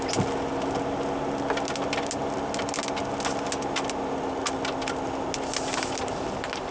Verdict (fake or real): real